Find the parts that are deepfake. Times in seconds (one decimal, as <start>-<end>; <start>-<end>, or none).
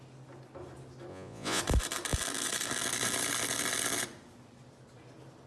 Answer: 1.1-1.6